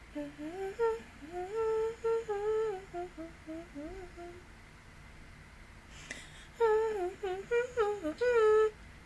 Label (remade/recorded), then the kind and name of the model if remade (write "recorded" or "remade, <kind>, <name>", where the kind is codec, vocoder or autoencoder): recorded